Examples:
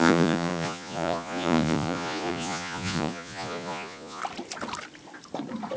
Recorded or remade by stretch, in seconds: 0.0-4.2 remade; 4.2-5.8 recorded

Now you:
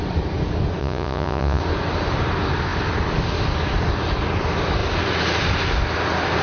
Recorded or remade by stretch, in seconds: 0.0-0.8 recorded; 0.8-1.6 remade; 1.6-6.4 recorded